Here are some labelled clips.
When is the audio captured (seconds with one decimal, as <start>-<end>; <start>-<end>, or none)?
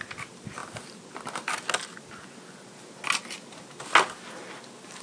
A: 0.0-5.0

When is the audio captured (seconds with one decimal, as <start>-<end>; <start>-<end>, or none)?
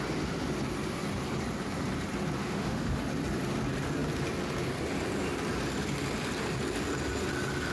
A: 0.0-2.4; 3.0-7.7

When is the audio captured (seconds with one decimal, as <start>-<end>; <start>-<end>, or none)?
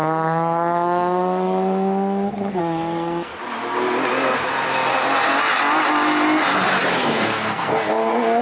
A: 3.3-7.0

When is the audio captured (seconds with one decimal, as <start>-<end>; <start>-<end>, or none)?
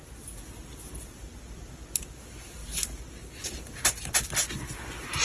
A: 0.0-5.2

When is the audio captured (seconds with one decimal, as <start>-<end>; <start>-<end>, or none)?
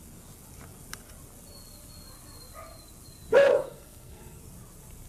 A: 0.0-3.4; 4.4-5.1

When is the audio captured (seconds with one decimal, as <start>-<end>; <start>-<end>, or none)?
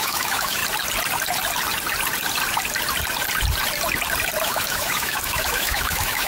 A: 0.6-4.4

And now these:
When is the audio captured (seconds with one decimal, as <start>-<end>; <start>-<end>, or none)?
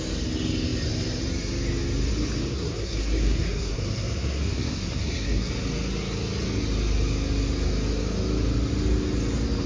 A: 0.0-2.5; 5.5-9.7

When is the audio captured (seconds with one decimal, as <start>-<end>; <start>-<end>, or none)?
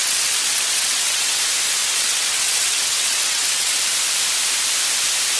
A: 1.4-1.8; 3.8-5.4